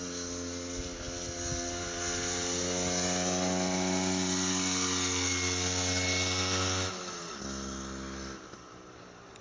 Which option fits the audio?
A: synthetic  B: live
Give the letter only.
B